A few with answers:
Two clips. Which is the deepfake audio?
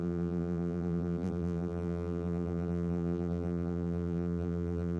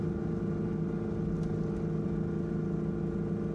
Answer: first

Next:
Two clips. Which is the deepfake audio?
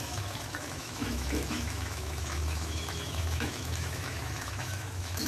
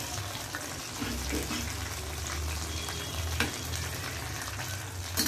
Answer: first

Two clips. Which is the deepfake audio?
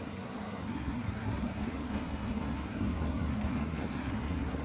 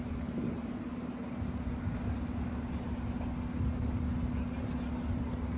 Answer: first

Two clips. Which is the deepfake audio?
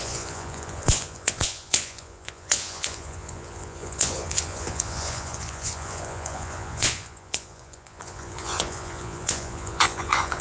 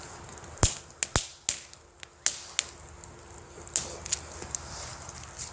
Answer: first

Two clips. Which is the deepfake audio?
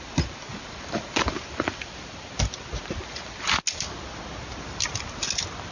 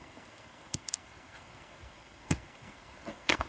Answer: second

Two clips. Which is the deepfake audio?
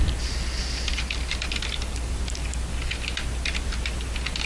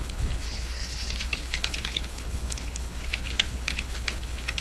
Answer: second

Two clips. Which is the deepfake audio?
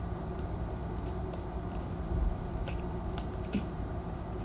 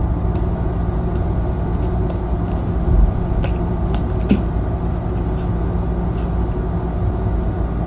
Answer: first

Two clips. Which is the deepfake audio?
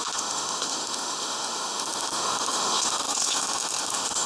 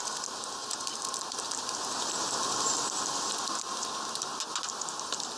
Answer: first